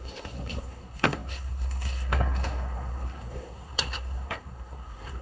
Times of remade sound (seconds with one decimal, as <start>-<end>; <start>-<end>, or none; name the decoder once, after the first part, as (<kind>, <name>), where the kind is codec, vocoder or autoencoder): 0.0-5.2 (codec, SNAC)